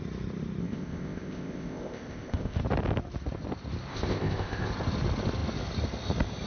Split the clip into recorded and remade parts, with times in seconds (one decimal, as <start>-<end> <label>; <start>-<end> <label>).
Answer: 0.0-0.6 recorded; 0.6-2.6 remade; 2.6-3.9 recorded; 3.9-4.7 remade; 4.7-6.5 recorded